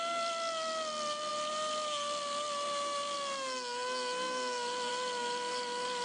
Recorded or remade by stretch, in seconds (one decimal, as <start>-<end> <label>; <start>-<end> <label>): 0.0-6.0 recorded